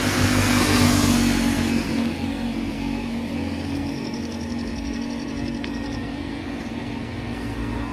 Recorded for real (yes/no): no